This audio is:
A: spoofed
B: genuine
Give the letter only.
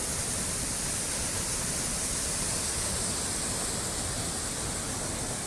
B